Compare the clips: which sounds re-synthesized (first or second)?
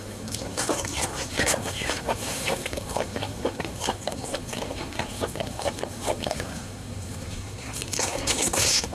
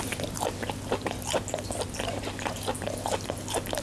first